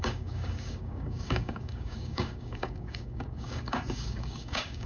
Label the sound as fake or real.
fake